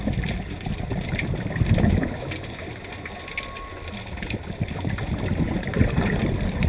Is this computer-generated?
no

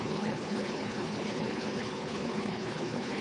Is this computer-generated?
yes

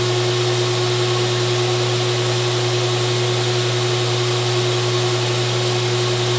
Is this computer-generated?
no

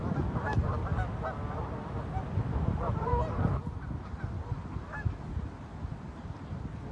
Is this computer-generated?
no